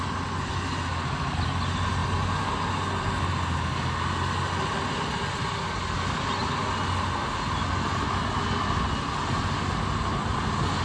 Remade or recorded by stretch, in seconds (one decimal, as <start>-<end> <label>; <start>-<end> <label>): 0.0-10.8 recorded

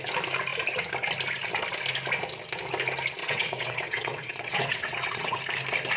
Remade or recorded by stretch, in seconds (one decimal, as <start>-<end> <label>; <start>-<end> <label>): 0.0-3.2 recorded; 3.2-5.4 remade; 5.4-6.0 recorded